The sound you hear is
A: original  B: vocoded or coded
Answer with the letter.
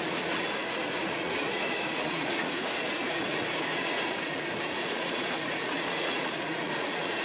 B